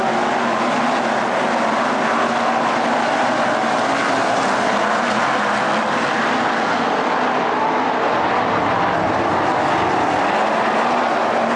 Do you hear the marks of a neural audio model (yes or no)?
no